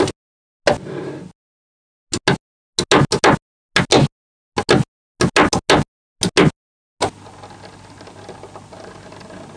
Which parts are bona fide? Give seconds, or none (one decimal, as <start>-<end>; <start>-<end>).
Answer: 0.0-9.6